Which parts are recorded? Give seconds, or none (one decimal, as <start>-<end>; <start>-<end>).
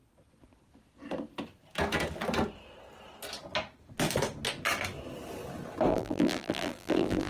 0.0-5.9